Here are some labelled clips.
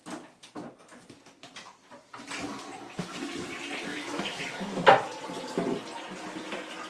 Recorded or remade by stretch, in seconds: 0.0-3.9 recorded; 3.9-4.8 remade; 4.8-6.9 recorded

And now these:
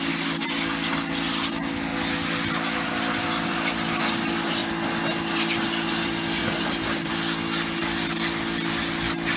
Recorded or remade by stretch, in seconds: 0.0-6.4 recorded; 6.4-7.1 remade; 7.1-9.4 recorded

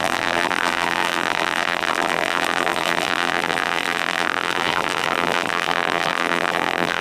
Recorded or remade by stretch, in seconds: 0.0-7.0 remade

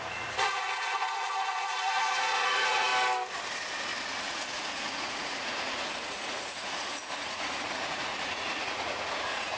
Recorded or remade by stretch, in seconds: 0.0-2.9 remade; 2.9-4.2 recorded; 4.2-9.6 remade

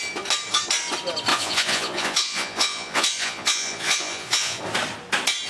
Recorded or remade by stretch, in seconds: 0.0-1.3 recorded; 1.3-4.6 remade; 4.6-5.5 recorded

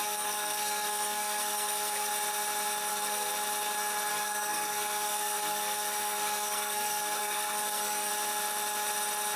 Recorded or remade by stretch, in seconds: 0.0-2.1 remade; 2.1-2.9 recorded; 2.9-3.3 remade; 3.3-4.1 recorded; 4.1-8.1 remade; 8.1-9.4 recorded